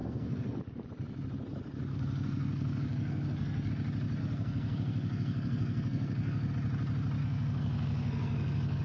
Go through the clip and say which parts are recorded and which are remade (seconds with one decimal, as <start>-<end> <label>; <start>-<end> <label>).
0.0-0.6 remade; 0.6-1.9 recorded; 1.9-3.7 remade; 3.7-4.2 recorded; 4.2-6.5 remade; 6.5-7.2 recorded; 7.2-8.8 remade